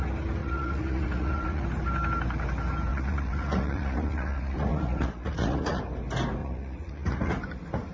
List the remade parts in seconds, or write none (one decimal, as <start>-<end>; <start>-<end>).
0.4-1.6; 2.9-5.8; 6.4-7.3